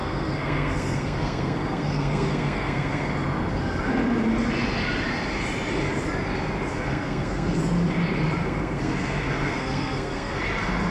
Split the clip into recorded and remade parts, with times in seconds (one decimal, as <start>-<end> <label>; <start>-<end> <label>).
0.0-3.1 remade; 3.1-6.7 recorded; 6.7-7.6 remade; 7.6-8.4 recorded; 8.4-10.4 remade; 10.4-10.9 recorded